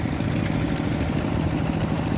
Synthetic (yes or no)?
no